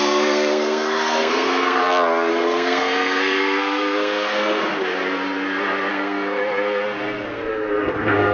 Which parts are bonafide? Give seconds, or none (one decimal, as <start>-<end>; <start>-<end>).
1.8-2.3; 4.6-5.9; 6.4-7.3